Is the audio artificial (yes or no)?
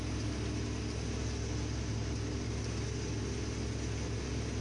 no